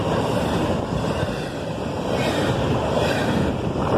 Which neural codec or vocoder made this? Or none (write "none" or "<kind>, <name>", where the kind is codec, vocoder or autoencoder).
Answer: vocoder, BigVGAN v2